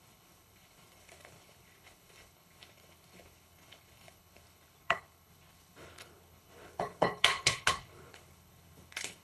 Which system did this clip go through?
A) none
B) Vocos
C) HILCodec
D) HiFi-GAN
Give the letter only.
C